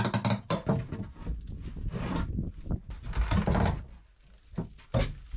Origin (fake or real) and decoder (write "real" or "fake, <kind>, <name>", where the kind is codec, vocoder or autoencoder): real